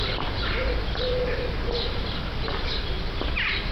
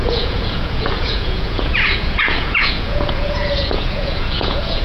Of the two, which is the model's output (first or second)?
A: second